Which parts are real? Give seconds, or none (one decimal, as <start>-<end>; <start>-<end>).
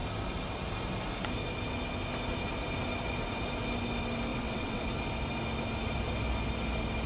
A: 0.0-4.3; 4.8-7.1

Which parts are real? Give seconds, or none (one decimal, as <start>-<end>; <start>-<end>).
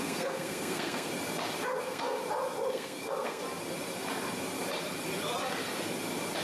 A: 1.1-1.8; 2.2-2.7; 3.4-6.4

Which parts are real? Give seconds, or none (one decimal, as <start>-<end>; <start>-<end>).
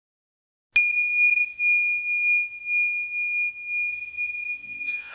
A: 0.0-0.9; 1.6-3.9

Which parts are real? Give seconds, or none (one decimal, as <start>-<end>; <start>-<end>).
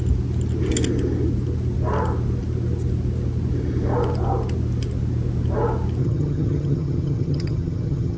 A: 0.0-6.0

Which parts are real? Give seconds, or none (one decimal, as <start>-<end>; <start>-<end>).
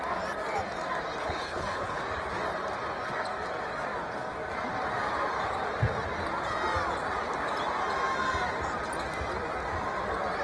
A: 0.0-1.2; 2.0-10.4